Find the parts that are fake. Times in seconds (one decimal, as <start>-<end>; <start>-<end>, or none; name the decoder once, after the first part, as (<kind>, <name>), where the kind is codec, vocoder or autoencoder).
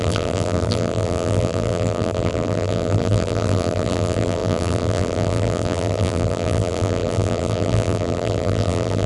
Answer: 0.0-9.1 (vocoder, BigVGAN v2)